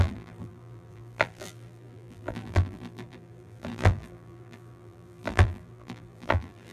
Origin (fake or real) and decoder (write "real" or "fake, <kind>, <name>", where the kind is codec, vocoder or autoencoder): fake, vocoder, BigVGAN v2